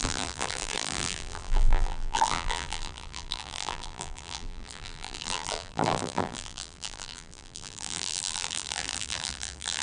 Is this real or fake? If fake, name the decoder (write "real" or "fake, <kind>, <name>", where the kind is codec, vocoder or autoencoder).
fake, vocoder, BigVGAN v2